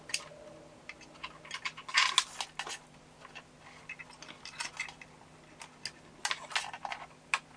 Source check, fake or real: real